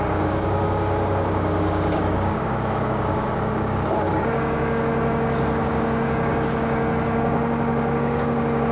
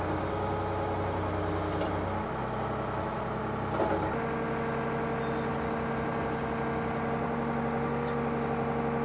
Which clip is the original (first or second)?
second